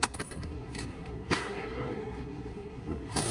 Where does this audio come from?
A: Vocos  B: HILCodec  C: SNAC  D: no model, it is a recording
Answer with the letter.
C